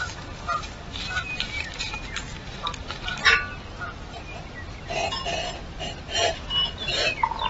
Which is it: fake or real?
real